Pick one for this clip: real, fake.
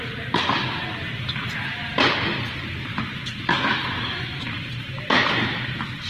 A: real